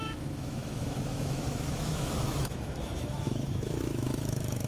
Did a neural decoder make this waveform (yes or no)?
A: yes